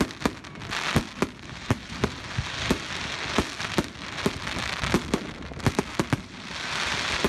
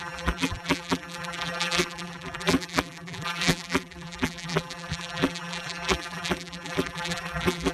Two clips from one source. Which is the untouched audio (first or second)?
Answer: first